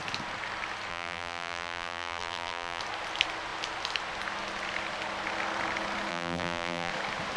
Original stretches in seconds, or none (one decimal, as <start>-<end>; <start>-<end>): 0.0-0.9; 2.8-6.1; 6.9-7.4

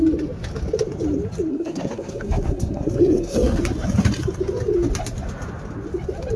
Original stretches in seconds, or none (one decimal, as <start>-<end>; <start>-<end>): 0.0-1.5; 3.6-6.4

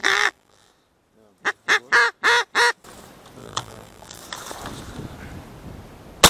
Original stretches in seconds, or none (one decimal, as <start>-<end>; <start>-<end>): 0.7-3.4; 4.2-6.3

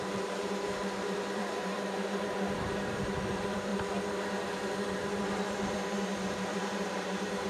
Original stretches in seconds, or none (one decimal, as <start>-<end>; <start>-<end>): 3.7-5.1

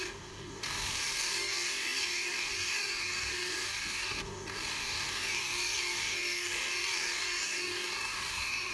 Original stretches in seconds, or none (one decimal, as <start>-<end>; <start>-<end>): none

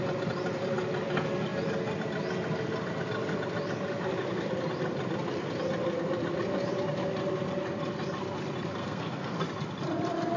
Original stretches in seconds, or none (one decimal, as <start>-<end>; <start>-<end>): 0.0-8.8; 9.4-10.4

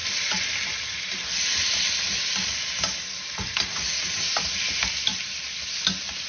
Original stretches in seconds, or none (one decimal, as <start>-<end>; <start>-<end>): 0.0-6.3